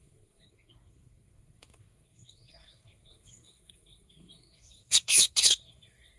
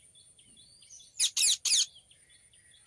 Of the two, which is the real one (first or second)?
second